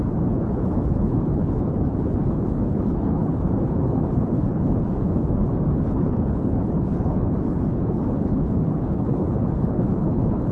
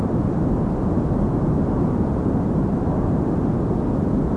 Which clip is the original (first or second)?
second